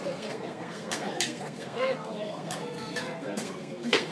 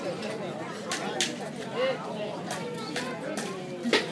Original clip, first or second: second